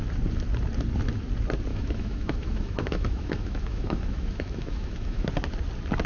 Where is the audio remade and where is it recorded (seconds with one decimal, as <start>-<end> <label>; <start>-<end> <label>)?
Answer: 0.0-1.7 recorded; 1.7-5.3 remade; 5.3-6.1 recorded